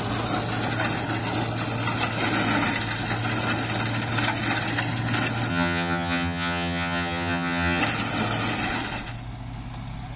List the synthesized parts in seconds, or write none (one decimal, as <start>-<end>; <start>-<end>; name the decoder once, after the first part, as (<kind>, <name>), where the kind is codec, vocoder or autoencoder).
5.5-7.8 (vocoder, HiFi-GAN)